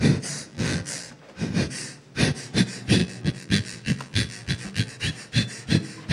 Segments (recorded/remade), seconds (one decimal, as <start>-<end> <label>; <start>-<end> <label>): 0.0-0.5 recorded; 0.5-1.1 remade; 1.1-3.0 recorded; 3.0-4.9 remade; 4.9-6.1 recorded